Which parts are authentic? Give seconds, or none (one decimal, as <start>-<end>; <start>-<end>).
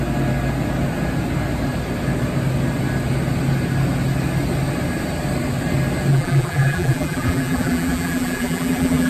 0.0-6.1